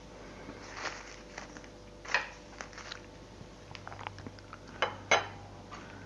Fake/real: real